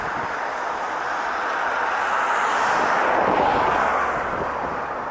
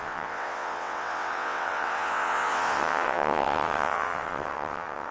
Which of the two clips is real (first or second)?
first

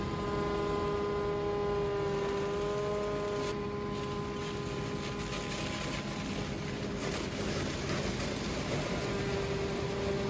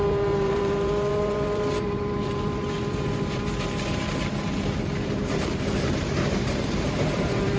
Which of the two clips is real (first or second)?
first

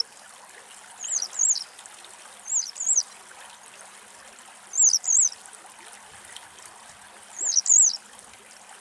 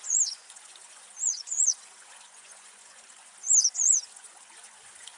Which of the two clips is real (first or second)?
first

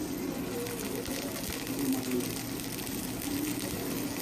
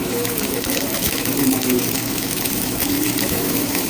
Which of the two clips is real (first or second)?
first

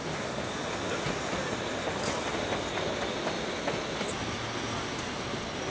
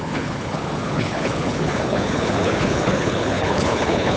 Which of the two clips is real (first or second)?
first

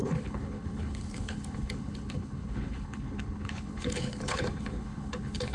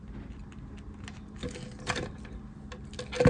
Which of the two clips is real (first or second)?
second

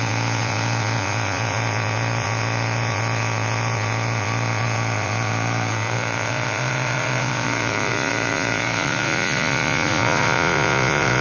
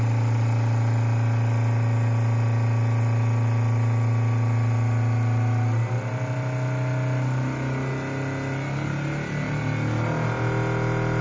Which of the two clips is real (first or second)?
second